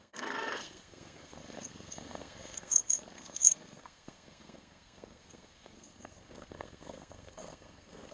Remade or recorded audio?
remade